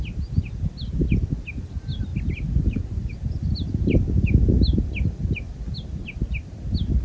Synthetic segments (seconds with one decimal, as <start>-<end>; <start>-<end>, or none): none